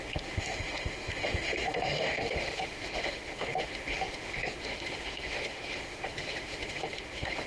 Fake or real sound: fake